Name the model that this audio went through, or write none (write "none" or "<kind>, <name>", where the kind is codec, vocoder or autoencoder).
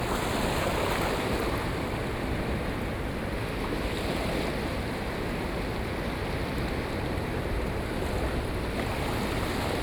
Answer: none